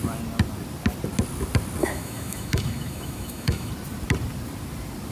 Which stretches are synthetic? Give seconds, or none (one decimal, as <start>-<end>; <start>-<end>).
1.8-3.7